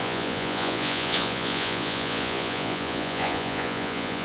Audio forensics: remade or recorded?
remade